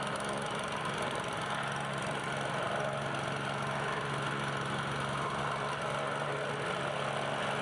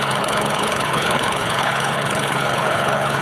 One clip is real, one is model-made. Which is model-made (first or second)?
second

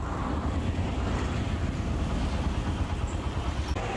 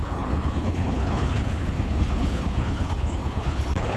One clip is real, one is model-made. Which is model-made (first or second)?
second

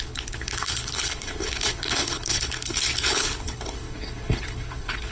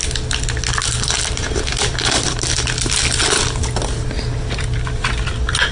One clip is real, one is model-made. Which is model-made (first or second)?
first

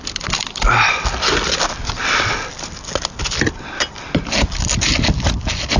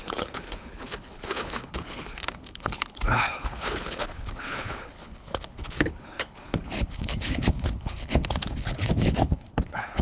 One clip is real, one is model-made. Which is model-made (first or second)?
second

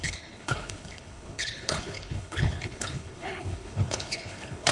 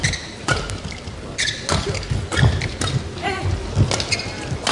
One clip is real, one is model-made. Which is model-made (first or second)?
first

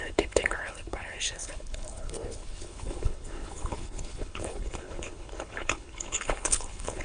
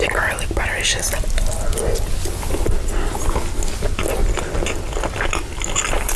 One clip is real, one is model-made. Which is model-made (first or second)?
first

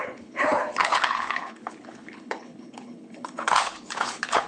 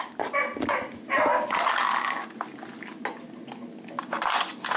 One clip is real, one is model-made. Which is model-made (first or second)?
first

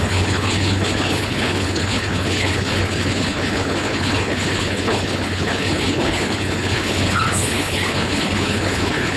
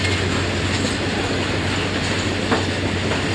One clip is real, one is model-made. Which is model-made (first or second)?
first